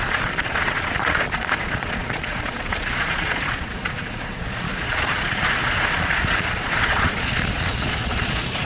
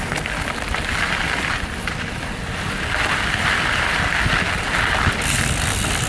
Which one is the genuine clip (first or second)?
second